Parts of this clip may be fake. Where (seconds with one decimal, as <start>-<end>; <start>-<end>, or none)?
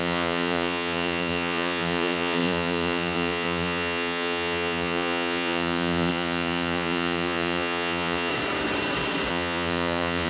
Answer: 0.0-8.3; 9.3-10.3